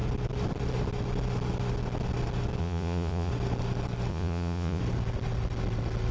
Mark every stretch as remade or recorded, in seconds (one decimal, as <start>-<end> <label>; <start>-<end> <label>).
0.0-2.6 recorded; 2.6-3.3 remade; 3.3-4.1 recorded; 4.1-4.8 remade; 4.8-6.1 recorded